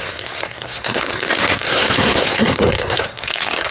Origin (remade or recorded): remade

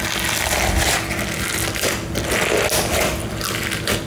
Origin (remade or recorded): recorded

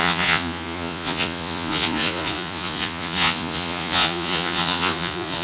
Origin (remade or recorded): remade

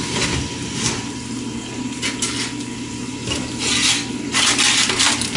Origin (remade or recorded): recorded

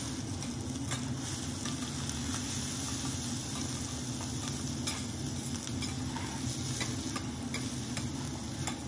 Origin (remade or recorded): recorded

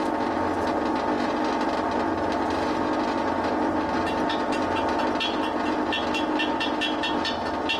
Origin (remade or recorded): recorded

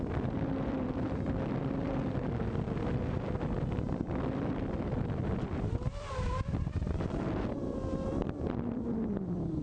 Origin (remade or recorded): remade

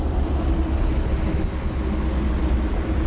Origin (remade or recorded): recorded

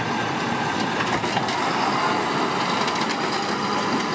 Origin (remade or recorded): recorded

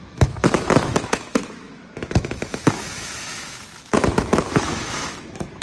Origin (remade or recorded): remade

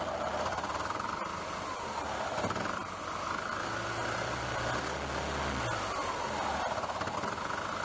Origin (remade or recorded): recorded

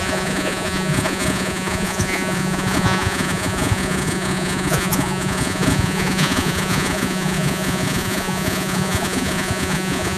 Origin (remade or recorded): remade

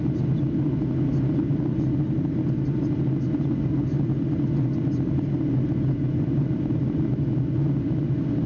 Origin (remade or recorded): recorded